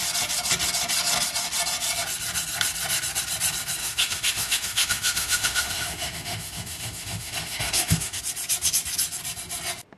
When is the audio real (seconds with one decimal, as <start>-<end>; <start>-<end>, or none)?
0.0-3.8; 8.2-10.0